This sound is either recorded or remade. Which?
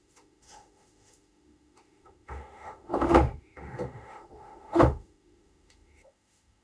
remade